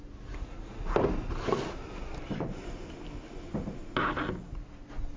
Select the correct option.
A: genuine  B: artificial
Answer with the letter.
A